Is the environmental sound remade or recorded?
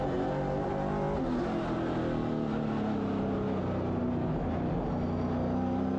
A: recorded